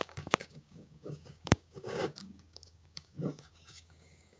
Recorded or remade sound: remade